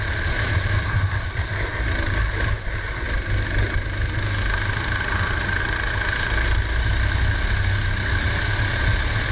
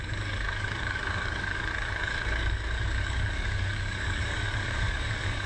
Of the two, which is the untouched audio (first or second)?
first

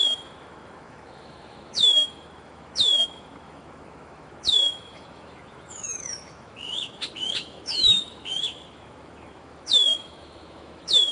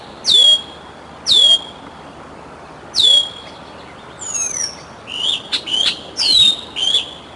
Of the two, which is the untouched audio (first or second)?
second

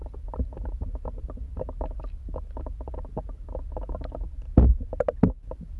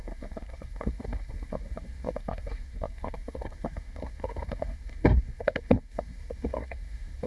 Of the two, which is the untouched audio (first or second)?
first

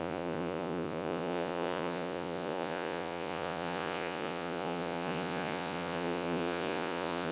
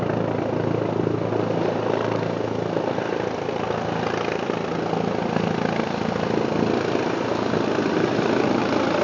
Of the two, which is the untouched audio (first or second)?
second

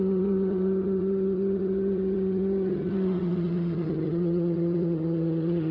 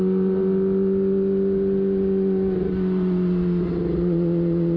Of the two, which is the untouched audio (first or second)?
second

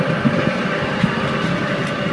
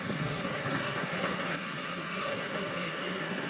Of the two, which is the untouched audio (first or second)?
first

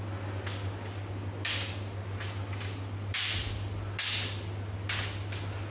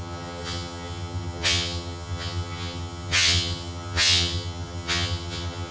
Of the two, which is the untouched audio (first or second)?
first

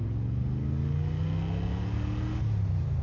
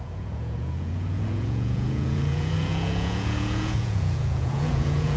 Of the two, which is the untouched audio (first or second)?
first